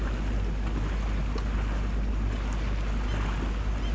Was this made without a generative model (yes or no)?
yes